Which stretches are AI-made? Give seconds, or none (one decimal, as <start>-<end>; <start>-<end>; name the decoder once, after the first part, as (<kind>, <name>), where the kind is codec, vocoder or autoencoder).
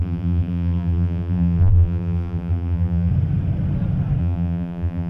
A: 0.0-3.1 (vocoder, BigVGAN v2); 4.2-5.1